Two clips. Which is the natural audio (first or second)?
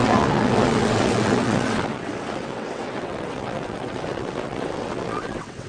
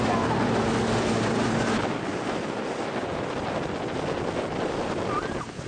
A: second